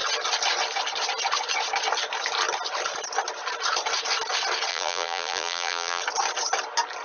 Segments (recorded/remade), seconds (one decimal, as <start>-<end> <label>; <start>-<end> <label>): 0.0-4.7 recorded; 4.7-6.0 remade; 6.0-7.0 recorded